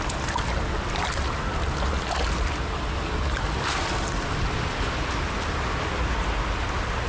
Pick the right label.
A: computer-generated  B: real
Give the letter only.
B